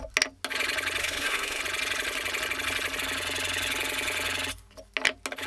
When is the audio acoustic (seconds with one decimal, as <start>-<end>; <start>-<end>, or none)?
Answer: 0.0-1.0; 1.6-5.5